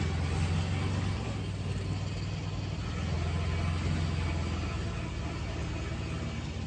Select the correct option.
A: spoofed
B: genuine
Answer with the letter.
B